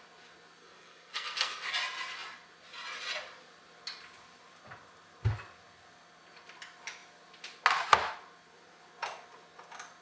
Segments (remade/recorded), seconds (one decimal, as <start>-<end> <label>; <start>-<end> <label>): 0.0-0.6 recorded; 0.6-1.7 remade; 1.7-10.0 recorded